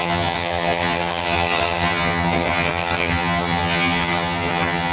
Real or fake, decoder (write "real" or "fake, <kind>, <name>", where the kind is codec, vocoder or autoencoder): fake, vocoder, HiFi-GAN